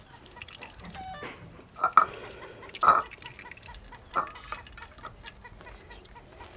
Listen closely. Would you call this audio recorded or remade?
recorded